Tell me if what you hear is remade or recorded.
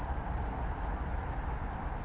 recorded